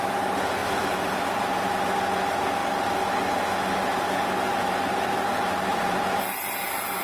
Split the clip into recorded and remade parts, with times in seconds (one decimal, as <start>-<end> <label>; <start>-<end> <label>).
0.0-0.6 recorded; 0.6-1.9 remade; 1.9-3.9 recorded; 3.9-7.0 remade